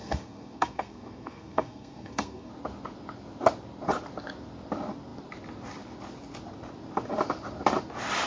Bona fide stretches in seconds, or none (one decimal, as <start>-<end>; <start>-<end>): 2.5-8.3

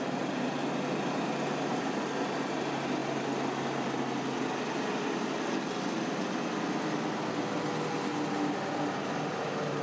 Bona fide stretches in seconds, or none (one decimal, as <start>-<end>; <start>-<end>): 0.0-9.8